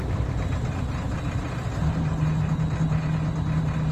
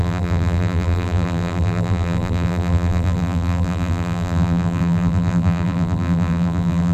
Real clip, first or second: first